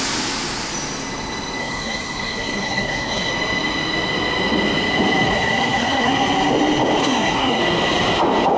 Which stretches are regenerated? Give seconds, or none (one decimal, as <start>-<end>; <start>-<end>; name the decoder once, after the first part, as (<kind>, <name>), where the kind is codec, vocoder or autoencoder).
1.6-3.3 (codec, SNAC); 5.3-6.1; 7.0-7.6